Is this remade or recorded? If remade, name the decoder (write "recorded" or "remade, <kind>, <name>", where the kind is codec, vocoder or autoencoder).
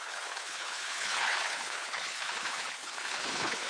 remade, codec, HILCodec